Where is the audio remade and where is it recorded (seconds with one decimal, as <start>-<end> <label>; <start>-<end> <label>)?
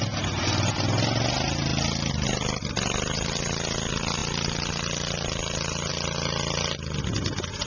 0.0-7.7 recorded